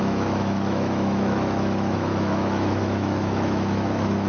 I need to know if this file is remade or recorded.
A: remade